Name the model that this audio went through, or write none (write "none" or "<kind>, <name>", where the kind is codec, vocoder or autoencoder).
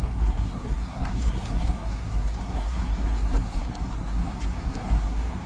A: codec, SNAC